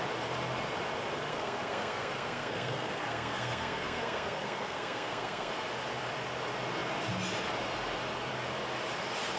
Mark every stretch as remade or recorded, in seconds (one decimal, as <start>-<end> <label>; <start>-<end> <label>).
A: 0.0-1.3 recorded; 1.3-5.5 remade; 5.5-9.4 recorded